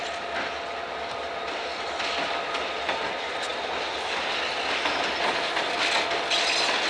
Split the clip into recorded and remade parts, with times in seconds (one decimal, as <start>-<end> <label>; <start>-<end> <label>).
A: 0.0-6.9 recorded